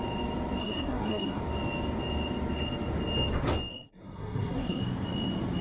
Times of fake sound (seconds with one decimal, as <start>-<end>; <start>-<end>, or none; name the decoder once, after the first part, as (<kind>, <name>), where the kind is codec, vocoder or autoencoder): 0.6-1.4 (codec, SNAC); 3.7-4.8